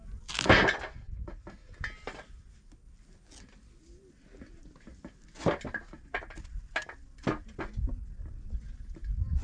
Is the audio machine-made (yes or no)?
no